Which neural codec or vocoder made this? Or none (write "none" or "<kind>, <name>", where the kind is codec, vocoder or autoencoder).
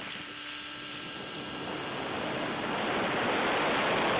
none